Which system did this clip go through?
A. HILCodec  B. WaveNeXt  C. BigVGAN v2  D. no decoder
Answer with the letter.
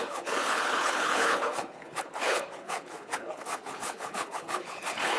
A